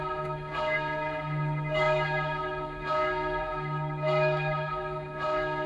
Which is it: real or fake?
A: fake